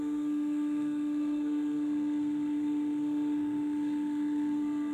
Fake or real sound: fake